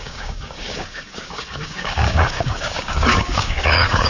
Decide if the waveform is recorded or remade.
remade